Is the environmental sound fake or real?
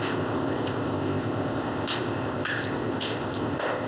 fake